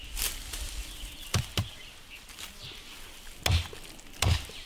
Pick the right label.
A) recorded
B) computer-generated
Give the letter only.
A